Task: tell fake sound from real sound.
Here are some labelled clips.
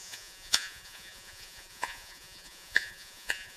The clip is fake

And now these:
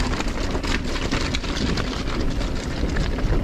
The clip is real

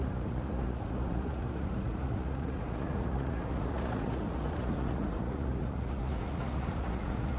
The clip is fake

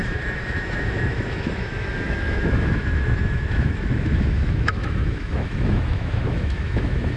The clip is fake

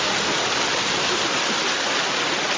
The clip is real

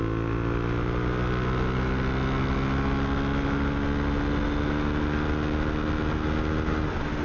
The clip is real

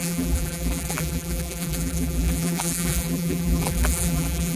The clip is fake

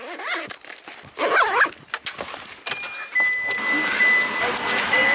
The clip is real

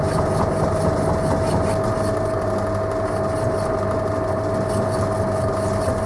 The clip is real